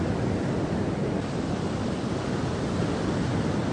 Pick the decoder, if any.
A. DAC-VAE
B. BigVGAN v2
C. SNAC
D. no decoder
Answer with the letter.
D